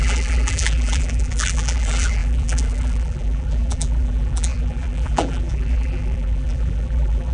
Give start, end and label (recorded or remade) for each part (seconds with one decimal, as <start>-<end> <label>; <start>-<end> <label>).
0.0-7.3 remade